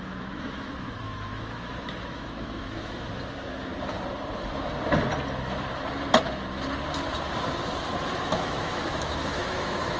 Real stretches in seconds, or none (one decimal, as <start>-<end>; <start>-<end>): 3.7-8.2